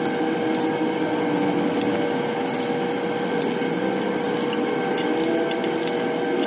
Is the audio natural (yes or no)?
yes